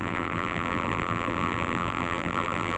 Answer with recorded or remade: remade